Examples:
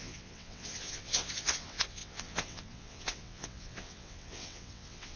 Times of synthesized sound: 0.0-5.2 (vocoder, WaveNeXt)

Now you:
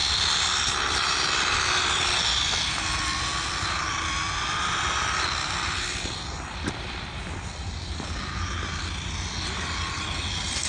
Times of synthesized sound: none

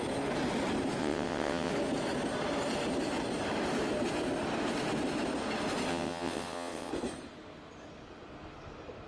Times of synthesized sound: 1.0-1.7 (vocoder, WaveNeXt); 5.9-6.9

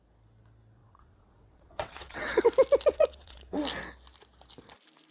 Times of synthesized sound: 0.8-2.4 (vocoder, WaveNeXt); 2.9-3.6